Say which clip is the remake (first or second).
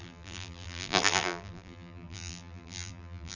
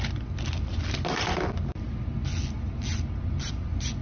first